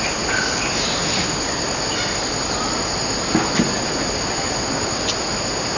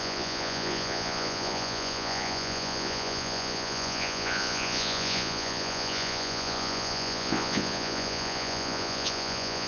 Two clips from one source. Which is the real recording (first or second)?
first